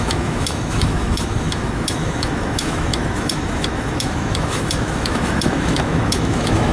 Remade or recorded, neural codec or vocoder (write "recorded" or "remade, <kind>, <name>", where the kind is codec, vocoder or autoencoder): remade, autoencoder, DAC-VAE